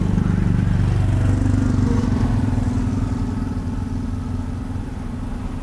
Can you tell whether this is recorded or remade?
recorded